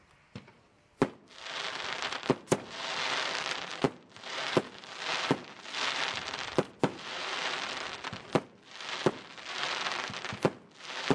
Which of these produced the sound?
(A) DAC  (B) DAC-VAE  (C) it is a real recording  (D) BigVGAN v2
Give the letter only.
C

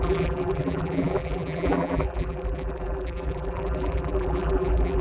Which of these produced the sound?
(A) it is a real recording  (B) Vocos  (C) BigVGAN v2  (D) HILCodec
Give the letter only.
C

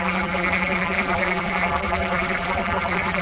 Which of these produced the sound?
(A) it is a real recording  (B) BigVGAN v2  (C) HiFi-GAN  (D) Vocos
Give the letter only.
B